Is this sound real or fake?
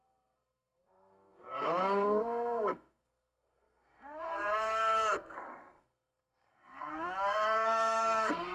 fake